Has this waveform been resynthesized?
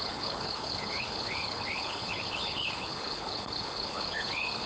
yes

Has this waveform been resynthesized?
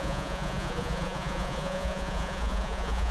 yes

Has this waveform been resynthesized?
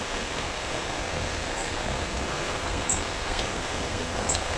yes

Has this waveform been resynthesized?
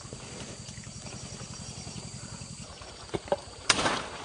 yes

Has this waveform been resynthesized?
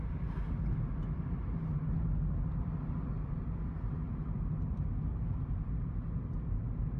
no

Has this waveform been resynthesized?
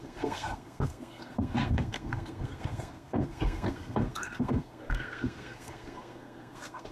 yes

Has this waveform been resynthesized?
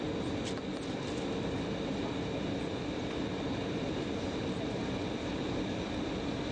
no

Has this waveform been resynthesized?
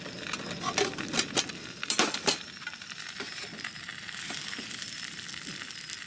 no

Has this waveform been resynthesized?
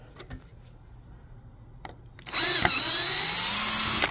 no